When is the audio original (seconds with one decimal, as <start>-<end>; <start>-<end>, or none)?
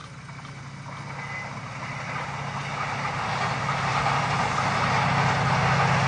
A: 0.0-6.1